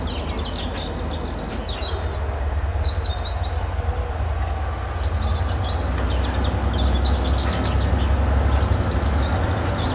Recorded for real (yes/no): yes